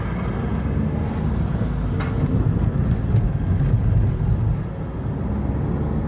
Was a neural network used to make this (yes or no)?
no